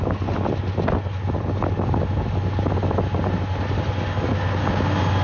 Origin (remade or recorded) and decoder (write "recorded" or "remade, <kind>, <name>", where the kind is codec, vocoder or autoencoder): recorded